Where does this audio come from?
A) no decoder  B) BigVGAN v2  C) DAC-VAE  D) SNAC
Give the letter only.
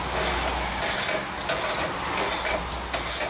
A